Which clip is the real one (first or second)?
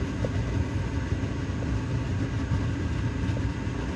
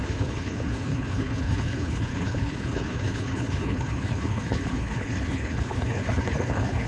first